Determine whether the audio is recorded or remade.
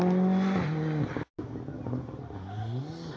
recorded